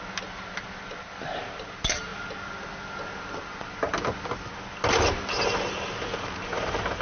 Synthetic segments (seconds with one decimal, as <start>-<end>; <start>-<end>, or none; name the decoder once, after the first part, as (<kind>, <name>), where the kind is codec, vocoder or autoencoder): none